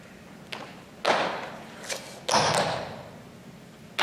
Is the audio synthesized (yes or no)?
no